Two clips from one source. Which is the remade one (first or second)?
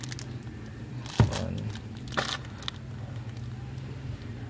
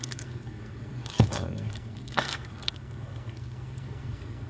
second